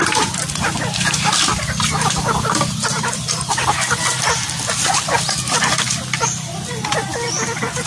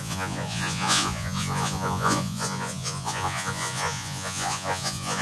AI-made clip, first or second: second